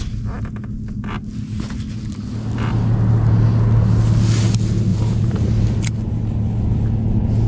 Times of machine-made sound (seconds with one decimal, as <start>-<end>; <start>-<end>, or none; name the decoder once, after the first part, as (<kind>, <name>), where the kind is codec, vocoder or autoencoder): 4.9-5.6 (vocoder, BigVGAN v2)